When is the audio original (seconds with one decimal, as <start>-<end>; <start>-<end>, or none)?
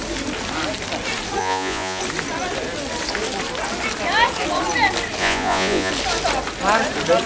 0.0-1.4; 2.0-5.2; 5.9-7.3